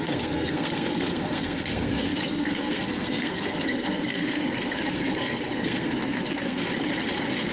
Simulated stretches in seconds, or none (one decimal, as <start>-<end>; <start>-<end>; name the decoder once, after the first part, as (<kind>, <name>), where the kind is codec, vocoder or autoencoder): 0.0-6.6 (codec, SNAC)